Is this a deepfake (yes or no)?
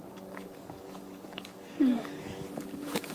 yes